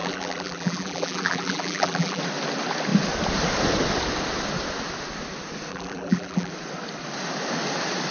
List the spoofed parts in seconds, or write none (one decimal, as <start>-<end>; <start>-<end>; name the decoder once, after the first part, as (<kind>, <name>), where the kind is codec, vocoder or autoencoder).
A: 0.0-2.2 (vocoder, BigVGAN v2); 5.7-6.5